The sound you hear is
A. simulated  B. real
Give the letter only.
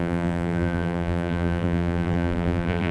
A